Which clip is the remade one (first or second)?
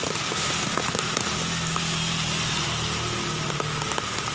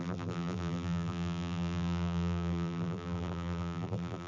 second